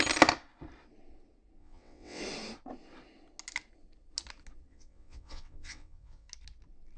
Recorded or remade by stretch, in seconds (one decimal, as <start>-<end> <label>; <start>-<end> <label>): 0.0-1.6 recorded; 1.6-2.2 remade; 2.2-4.7 recorded; 4.7-6.3 remade; 6.3-7.0 recorded